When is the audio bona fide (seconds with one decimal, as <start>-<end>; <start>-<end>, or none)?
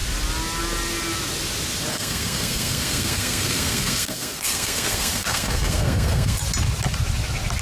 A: 0.0-1.9; 6.4-7.6